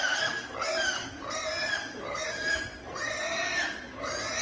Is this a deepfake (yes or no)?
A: yes